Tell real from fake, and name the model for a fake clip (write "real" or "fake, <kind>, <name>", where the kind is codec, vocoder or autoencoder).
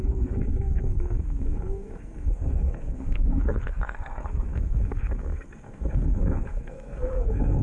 fake, codec, SNAC